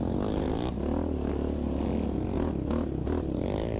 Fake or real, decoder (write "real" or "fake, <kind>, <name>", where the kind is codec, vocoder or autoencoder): real